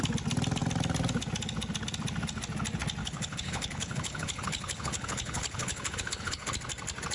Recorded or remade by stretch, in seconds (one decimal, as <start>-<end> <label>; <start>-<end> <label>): 0.0-3.0 recorded; 3.0-6.5 remade; 6.5-7.1 recorded